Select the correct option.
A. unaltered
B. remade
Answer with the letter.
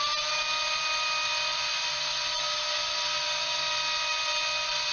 A